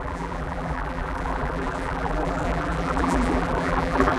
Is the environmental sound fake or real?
fake